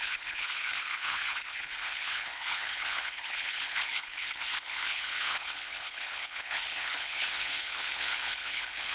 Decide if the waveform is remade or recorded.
remade